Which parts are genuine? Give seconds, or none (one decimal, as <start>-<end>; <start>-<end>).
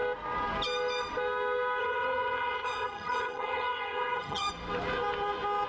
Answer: 0.0-1.8; 4.5-5.7